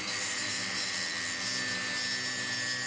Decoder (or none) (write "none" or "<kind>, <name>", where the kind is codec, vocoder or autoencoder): none